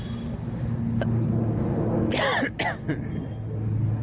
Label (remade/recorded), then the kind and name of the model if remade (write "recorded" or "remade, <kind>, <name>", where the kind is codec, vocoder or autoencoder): recorded